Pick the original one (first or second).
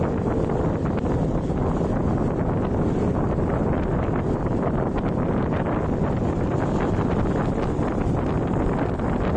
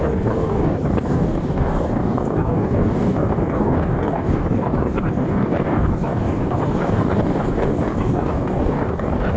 first